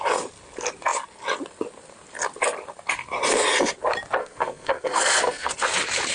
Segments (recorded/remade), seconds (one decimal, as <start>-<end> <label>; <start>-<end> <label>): 0.0-4.2 recorded; 4.2-5.5 remade; 5.5-6.1 recorded